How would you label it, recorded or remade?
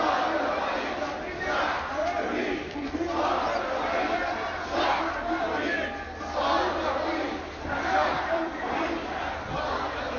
remade